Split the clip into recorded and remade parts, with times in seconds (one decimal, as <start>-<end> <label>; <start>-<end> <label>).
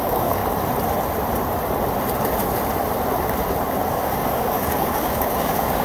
0.0-0.4 remade; 0.4-3.9 recorded; 3.9-5.8 remade